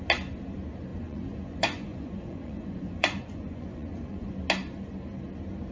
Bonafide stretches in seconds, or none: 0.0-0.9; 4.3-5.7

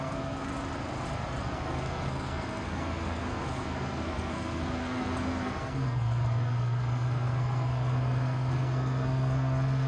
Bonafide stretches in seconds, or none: 0.5-1.4

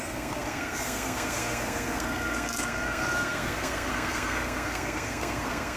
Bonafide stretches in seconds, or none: none

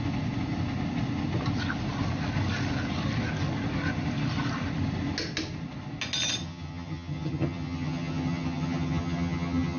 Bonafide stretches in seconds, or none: 0.0-6.4

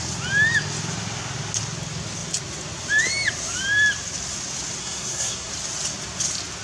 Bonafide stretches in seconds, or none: 0.0-4.8; 5.5-6.6

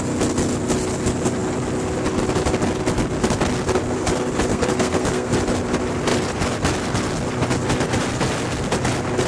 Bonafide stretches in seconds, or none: 0.0-4.5; 5.3-9.3

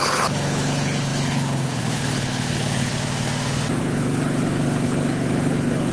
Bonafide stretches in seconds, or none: 2.9-3.8

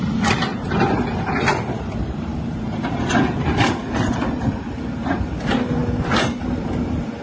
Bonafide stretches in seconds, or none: 5.8-6.4